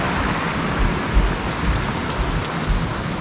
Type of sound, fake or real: real